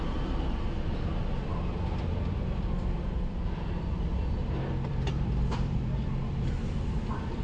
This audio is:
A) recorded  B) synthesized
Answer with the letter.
B